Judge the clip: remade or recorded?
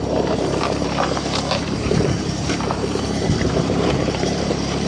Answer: remade